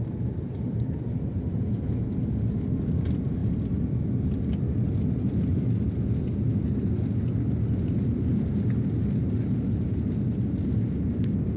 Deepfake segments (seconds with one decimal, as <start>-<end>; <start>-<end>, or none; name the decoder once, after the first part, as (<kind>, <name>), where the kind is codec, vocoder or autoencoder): none